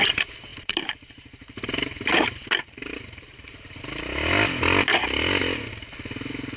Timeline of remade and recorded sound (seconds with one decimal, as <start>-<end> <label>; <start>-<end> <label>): 0.0-0.5 recorded; 0.5-3.8 remade; 3.8-6.6 recorded